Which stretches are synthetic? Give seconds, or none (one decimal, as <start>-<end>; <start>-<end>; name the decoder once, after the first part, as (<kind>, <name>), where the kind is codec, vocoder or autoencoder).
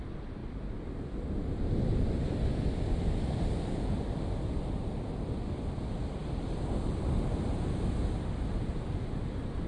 none